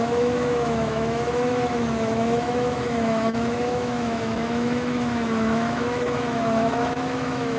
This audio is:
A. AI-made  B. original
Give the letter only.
A